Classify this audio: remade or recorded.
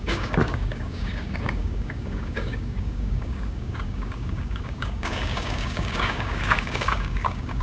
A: remade